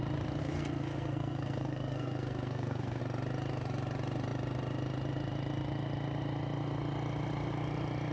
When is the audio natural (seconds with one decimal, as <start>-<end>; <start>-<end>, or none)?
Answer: 0.0-0.4; 3.0-8.1